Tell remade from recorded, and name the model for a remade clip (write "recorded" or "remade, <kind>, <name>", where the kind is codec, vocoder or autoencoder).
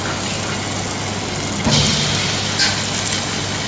recorded